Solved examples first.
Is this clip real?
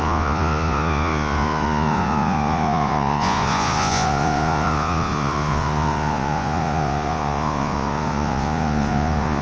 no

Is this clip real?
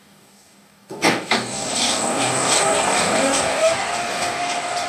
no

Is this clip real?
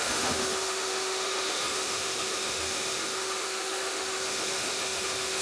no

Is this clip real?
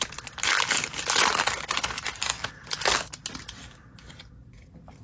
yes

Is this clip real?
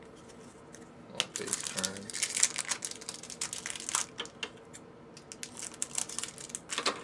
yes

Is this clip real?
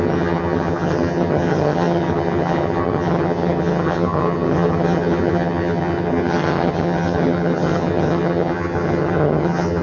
no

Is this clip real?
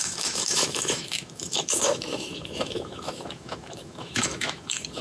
no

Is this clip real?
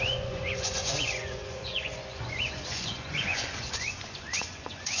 no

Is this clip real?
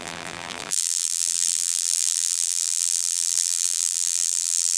no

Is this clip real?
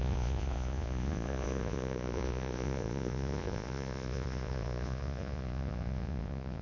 no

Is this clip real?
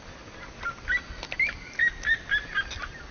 yes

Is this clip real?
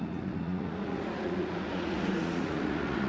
no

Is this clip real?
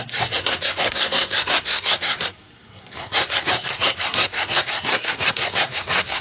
no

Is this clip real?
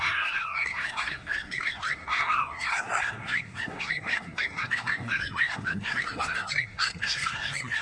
no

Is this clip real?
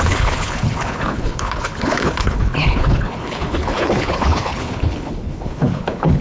no